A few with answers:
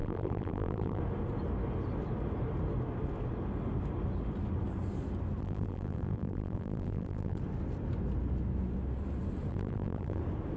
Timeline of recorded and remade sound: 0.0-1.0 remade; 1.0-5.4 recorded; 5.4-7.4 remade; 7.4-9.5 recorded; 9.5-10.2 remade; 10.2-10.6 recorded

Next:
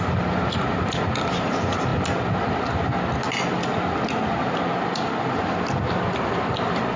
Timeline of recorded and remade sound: 0.0-7.0 recorded

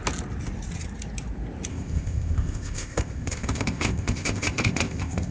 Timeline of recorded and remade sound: 0.0-1.7 recorded; 1.7-5.3 remade

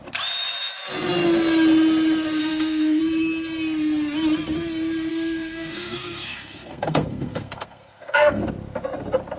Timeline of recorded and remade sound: 0.0-2.4 recorded; 2.4-3.0 remade; 3.0-5.1 recorded; 5.1-8.5 remade; 8.5-9.4 recorded

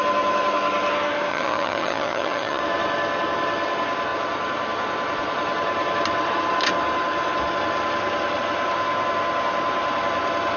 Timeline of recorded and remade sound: 0.0-1.3 recorded; 1.3-2.6 remade; 2.6-10.6 recorded

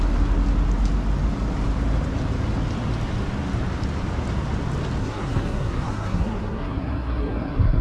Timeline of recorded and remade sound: 0.0-5.0 recorded; 5.0-7.8 remade

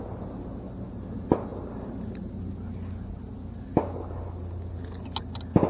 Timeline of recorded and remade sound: 0.0-5.7 recorded

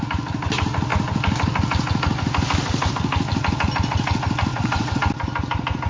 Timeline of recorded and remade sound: 0.0-4.5 recorded; 4.5-5.0 remade; 5.0-5.9 recorded